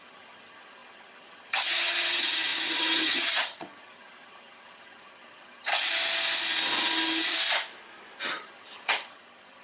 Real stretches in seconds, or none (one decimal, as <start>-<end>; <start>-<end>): 5.7-8.2